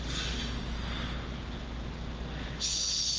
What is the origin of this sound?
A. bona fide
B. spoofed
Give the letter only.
A